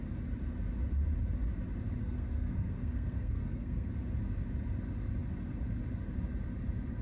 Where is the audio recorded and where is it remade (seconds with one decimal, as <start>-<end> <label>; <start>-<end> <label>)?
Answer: 0.0-2.0 recorded; 2.0-3.9 remade; 3.9-7.0 recorded